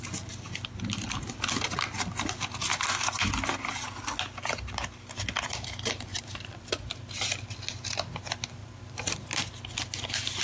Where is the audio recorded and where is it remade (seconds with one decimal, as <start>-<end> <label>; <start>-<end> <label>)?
0.0-6.1 recorded; 6.1-6.7 remade; 6.7-8.6 recorded; 8.6-9.4 remade; 9.4-10.4 recorded